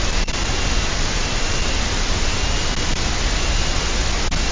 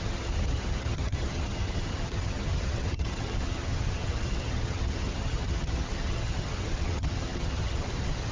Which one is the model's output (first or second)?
second